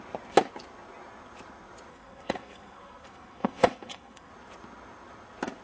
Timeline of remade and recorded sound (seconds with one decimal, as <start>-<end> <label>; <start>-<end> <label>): 0.0-1.9 recorded; 1.9-4.3 remade; 4.3-5.6 recorded